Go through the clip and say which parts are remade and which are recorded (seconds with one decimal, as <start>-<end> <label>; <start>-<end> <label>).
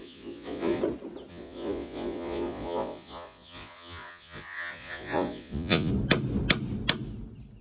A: 0.0-0.8 remade; 0.8-1.3 recorded; 1.3-5.9 remade; 5.9-7.6 recorded